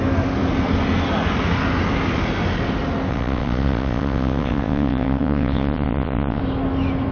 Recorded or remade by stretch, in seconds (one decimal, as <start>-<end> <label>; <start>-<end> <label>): 0.0-3.1 recorded; 3.1-6.4 remade; 6.4-7.1 recorded